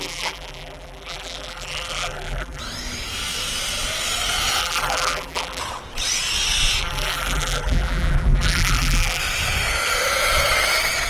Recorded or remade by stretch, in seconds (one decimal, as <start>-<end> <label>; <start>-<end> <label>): 0.0-2.6 remade; 2.6-4.6 recorded; 4.6-5.6 remade; 5.6-6.8 recorded; 6.8-9.2 remade; 9.2-11.1 recorded

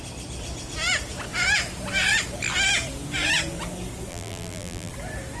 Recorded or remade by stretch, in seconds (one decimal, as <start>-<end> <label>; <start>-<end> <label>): 0.0-4.1 recorded; 4.1-4.9 remade; 4.9-5.4 recorded